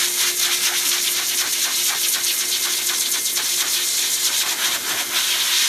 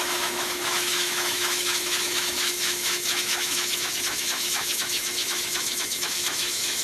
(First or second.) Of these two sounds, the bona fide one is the first